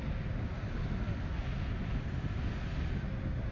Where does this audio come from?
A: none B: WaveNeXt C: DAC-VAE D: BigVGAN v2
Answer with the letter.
A